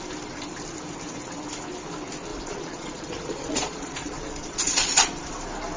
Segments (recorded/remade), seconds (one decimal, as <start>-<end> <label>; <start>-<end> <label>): 0.0-2.3 recorded; 2.3-5.3 remade; 5.3-5.8 recorded